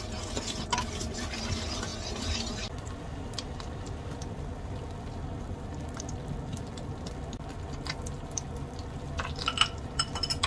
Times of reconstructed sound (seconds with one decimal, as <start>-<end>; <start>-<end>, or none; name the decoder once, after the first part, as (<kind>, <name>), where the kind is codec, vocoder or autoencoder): none

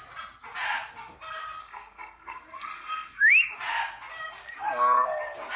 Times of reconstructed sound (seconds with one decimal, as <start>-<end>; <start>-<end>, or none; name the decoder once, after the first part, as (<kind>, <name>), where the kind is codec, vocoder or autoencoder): 1.6-3.3 (codec, SNAC)

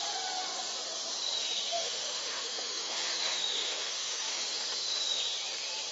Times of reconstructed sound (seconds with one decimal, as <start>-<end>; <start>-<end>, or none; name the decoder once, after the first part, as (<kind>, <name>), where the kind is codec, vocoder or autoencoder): 1.7-5.2 (autoencoder, DAC-VAE)

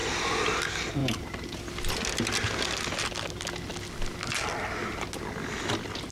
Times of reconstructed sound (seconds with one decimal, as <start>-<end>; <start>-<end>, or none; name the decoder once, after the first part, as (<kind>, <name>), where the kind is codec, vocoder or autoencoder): 1.0-1.6 (vocoder, BigVGAN v2)

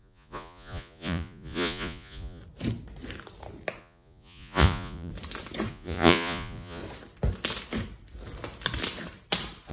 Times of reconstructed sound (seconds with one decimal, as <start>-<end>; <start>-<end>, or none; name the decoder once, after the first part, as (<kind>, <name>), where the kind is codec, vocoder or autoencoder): 0.0-2.4 (vocoder, Vocos); 3.8-5.1; 5.7-6.8

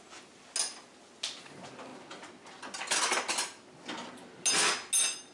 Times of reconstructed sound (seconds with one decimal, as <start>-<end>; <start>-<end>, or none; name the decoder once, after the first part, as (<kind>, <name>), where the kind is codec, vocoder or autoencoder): none

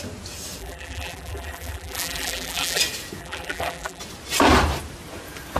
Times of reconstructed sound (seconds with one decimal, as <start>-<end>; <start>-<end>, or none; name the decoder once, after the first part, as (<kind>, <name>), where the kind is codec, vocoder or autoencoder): 0.6-2.8 (vocoder, BigVGAN v2); 3.2-4.0

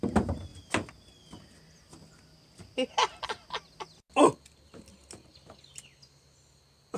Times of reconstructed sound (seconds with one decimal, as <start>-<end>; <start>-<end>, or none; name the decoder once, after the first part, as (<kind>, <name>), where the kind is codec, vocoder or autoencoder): none